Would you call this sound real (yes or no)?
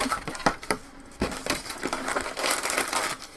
yes